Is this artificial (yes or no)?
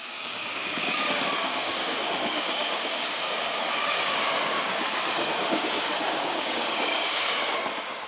yes